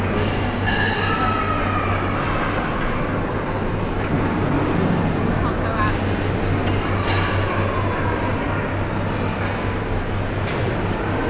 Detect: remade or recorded recorded